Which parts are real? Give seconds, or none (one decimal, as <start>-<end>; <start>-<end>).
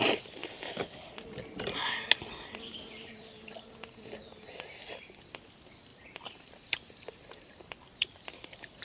0.4-5.2